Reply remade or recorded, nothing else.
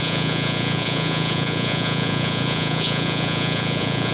remade